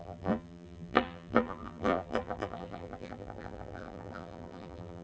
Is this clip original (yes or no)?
no